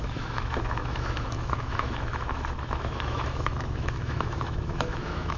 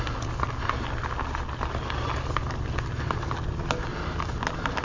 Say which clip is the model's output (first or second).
first